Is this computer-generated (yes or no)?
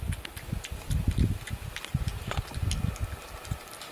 no